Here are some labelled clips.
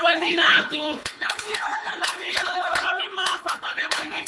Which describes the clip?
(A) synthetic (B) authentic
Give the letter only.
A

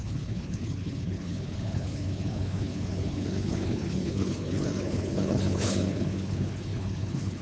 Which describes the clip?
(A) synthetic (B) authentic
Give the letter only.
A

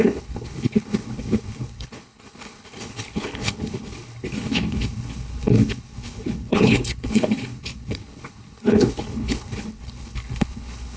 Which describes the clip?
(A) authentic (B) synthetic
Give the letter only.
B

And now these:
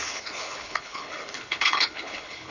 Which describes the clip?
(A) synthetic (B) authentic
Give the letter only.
A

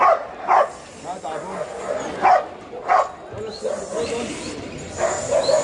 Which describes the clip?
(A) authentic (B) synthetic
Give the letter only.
A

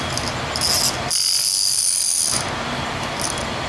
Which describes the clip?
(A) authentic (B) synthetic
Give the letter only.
A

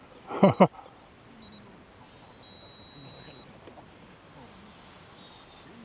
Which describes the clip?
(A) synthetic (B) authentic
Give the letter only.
B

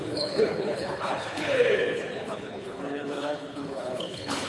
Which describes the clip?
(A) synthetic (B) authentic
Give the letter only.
A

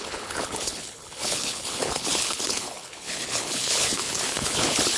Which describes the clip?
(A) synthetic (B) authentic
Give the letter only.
A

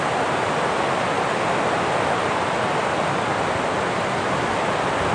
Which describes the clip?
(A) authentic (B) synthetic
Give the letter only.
A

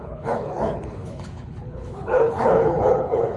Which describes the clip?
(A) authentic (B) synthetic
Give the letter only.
B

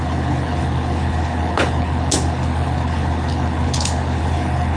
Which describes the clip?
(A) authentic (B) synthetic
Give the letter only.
B